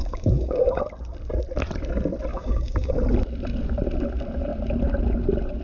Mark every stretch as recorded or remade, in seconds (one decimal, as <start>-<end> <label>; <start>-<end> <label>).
0.0-0.8 remade; 0.8-2.3 recorded; 2.3-2.9 remade; 2.9-5.6 recorded